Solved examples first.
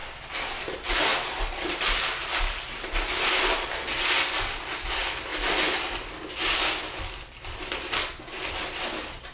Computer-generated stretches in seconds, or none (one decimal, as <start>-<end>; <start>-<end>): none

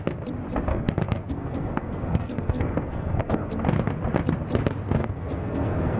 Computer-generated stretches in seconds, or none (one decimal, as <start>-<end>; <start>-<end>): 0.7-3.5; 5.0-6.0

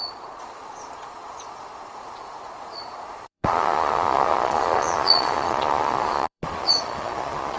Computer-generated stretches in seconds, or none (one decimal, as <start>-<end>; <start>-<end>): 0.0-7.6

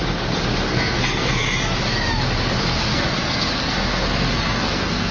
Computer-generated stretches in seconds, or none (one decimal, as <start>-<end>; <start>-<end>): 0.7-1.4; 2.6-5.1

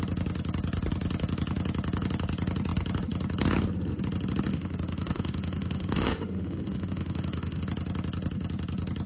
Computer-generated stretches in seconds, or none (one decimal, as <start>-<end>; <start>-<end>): 4.5-7.6

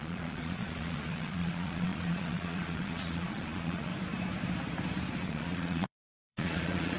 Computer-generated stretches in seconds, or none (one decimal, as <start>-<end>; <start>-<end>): 0.0-3.9; 5.2-7.0

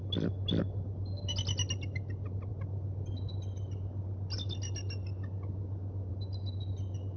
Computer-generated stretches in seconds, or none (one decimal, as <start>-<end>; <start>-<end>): none

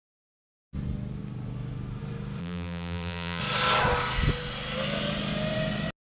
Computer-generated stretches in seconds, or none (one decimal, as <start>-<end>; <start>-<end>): 2.4-3.4